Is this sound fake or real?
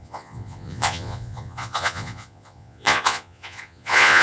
fake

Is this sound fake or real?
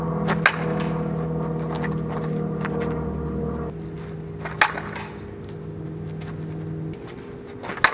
real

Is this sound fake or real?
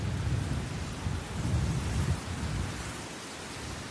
real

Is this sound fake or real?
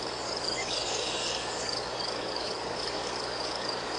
fake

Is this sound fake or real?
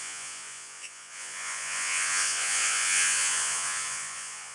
fake